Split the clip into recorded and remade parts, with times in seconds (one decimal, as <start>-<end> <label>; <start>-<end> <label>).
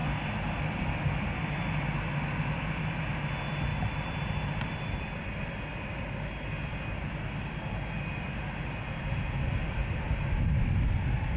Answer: 0.0-3.7 recorded; 3.7-5.5 remade; 5.5-9.6 recorded; 9.6-10.4 remade; 10.4-11.4 recorded